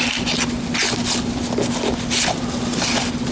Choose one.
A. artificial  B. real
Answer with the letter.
B